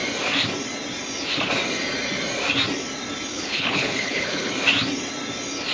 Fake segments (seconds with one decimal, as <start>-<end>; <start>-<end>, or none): 3.3-4.5